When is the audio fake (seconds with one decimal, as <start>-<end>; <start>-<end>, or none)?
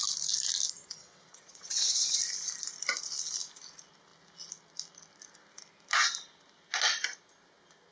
1.0-2.2